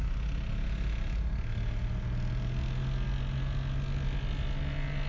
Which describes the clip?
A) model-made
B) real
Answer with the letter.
B